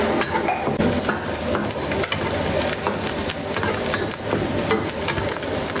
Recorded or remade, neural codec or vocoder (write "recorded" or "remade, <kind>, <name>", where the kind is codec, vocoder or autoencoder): recorded